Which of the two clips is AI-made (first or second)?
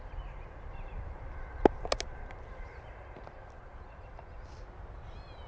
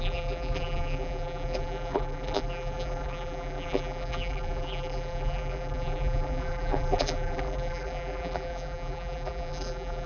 second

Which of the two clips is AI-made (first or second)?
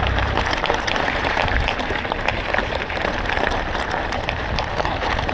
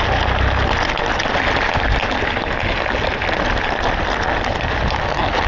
first